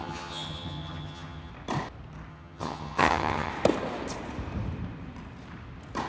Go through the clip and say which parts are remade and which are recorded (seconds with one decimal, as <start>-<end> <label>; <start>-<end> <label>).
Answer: 0.0-1.5 remade; 1.5-2.3 recorded; 2.3-3.5 remade; 3.5-6.1 recorded